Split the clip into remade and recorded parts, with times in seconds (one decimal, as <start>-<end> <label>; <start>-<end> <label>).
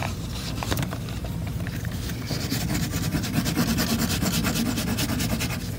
0.0-2.6 remade; 2.6-3.1 recorded; 3.1-3.8 remade; 3.8-5.8 recorded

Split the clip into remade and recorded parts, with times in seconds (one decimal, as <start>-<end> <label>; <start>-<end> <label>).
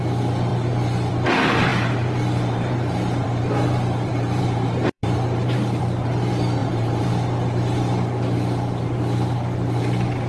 0.0-1.7 recorded; 1.7-5.8 remade; 5.8-6.6 recorded; 6.6-7.1 remade; 7.1-10.3 recorded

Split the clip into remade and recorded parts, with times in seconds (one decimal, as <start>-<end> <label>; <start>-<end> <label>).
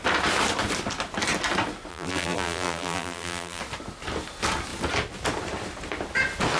0.0-1.9 recorded; 1.9-3.6 remade; 3.6-6.6 recorded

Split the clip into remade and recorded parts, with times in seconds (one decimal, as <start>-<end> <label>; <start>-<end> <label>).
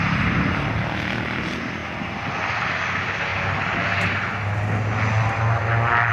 0.0-1.8 recorded; 1.8-2.3 remade; 2.3-6.1 recorded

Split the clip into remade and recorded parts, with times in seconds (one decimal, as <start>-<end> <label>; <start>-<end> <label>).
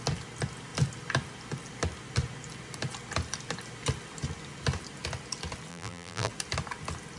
0.0-5.7 recorded; 5.7-6.3 remade; 6.3-7.2 recorded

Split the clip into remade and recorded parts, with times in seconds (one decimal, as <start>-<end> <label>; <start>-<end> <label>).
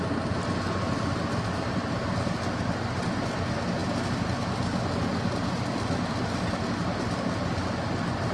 0.0-8.3 recorded